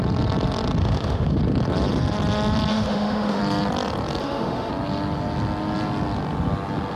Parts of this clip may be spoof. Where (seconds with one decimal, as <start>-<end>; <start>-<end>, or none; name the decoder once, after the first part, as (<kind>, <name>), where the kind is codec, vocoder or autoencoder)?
0.8-1.4 (autoencoder, DAC-VAE); 2.7-3.4; 4.2-4.7